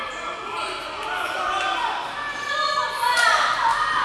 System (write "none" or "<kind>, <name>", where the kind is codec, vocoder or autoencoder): none